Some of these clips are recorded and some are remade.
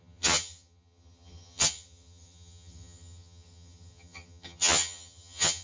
remade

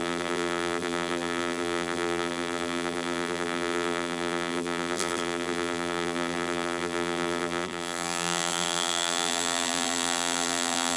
remade